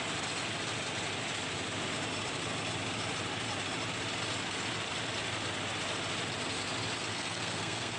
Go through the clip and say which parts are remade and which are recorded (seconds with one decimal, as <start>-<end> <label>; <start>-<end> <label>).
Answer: 0.0-7.1 recorded; 7.1-8.0 remade